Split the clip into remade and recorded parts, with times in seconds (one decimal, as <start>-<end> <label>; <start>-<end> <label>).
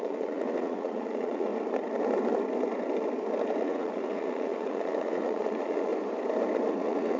0.0-1.5 remade; 1.5-3.6 recorded; 3.6-5.9 remade; 5.9-6.7 recorded; 6.7-7.2 remade